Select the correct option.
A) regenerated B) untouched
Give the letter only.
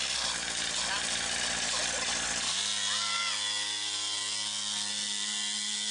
B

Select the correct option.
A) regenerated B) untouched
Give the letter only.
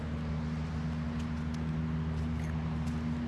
B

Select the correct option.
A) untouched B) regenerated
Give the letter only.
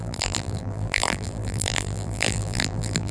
B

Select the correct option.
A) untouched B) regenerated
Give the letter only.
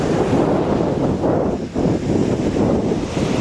A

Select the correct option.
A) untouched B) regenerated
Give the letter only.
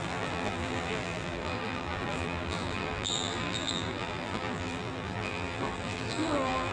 B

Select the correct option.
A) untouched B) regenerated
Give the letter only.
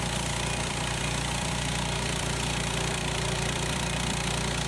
B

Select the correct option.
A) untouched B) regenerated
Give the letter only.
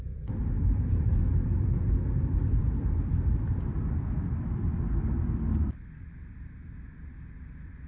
B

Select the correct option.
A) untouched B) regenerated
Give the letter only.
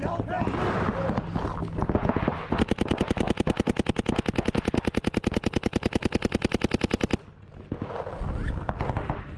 A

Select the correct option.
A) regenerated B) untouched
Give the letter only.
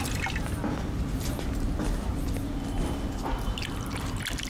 B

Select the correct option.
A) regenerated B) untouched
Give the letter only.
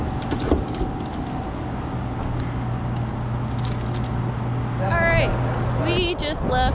B